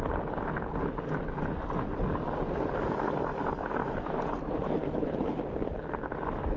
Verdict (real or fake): real